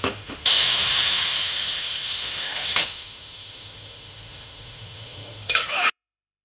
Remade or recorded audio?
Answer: remade